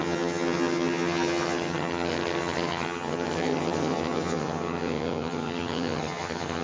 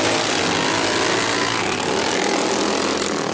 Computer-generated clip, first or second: first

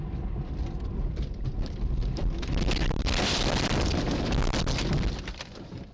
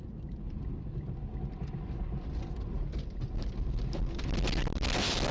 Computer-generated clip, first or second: first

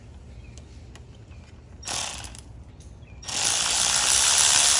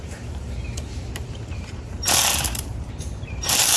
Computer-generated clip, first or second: second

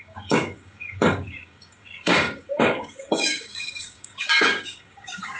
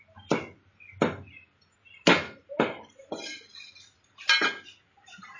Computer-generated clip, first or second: first